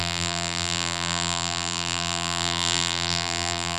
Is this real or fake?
fake